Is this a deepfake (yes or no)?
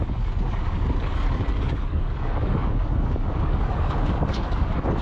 yes